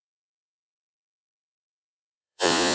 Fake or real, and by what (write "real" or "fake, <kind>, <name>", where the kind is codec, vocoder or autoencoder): fake, vocoder, Vocos